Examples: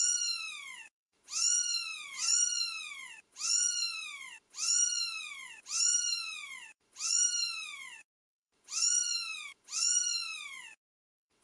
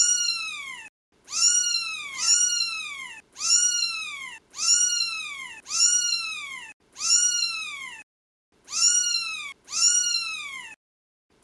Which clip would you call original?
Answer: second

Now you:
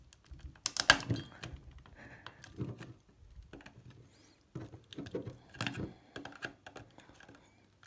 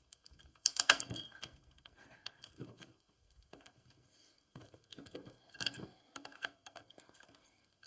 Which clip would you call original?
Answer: first